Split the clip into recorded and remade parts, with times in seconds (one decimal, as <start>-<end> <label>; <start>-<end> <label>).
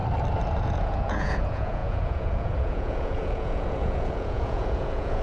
0.0-0.6 recorded; 0.6-5.2 remade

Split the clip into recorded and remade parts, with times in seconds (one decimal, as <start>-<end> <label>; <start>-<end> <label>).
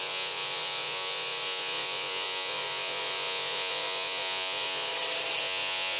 0.0-4.9 remade; 4.9-5.4 recorded; 5.4-6.0 remade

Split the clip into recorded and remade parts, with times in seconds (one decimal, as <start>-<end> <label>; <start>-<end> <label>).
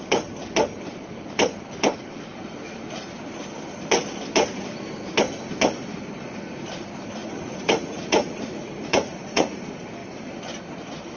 0.0-7.2 recorded; 7.2-9.6 remade; 9.6-11.2 recorded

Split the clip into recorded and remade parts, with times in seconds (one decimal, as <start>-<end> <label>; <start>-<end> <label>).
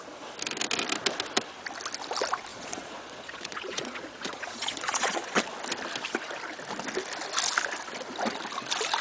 0.0-2.5 recorded; 2.5-5.5 remade; 5.5-9.0 recorded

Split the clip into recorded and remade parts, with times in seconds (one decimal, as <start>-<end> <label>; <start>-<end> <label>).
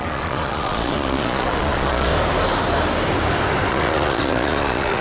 0.0-2.1 remade; 2.1-3.7 recorded; 3.7-5.0 remade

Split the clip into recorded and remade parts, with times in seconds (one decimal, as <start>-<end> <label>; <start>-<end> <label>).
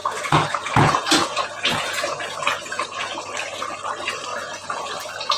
0.0-3.2 remade; 3.2-4.3 recorded; 4.3-4.9 remade; 4.9-5.4 recorded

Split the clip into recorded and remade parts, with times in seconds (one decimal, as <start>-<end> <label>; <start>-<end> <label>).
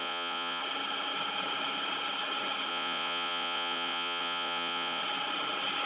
0.0-0.6 remade; 0.6-2.7 recorded; 2.7-5.0 remade; 5.0-5.9 recorded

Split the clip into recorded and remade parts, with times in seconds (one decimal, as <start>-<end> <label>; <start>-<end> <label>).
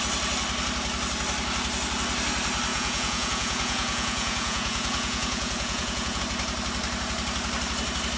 0.0-2.7 recorded; 2.7-6.2 remade; 6.2-8.2 recorded